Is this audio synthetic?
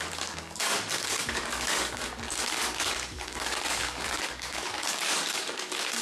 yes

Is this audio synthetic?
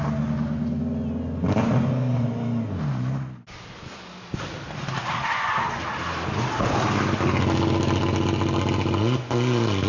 no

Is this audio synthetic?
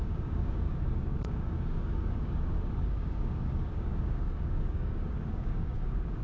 yes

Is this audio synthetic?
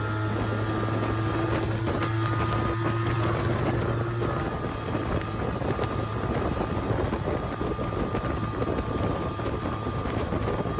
no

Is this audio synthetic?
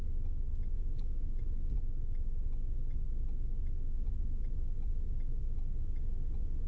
no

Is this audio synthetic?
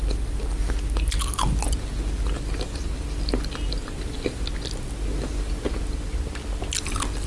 no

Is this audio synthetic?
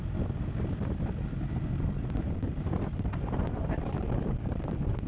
no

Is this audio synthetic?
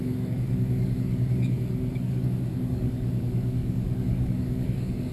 yes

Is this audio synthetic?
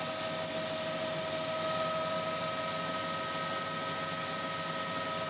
no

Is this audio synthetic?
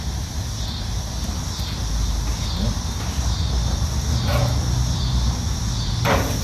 no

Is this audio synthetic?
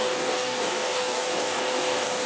yes